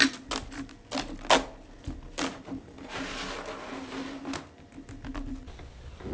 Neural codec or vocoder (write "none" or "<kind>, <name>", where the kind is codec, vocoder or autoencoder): none